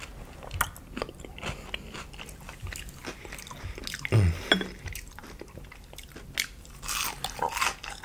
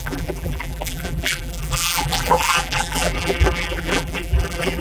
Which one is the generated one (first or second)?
second